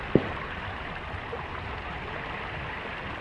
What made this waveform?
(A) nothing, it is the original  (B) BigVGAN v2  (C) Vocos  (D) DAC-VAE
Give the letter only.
A